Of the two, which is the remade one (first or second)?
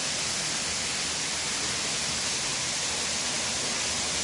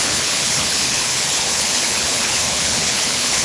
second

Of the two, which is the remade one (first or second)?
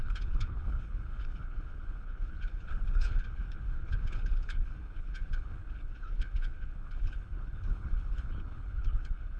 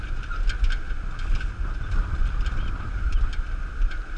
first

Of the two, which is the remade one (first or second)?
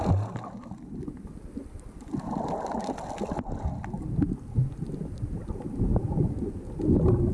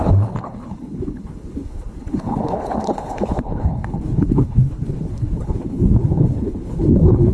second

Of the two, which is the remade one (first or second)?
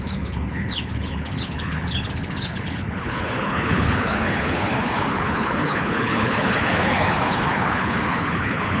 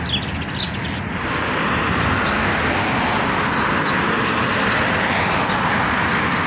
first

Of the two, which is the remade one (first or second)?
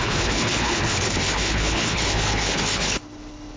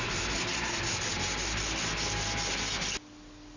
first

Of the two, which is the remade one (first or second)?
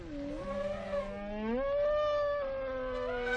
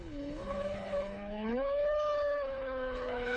second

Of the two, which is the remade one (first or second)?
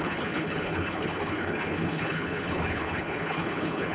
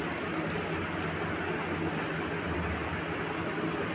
first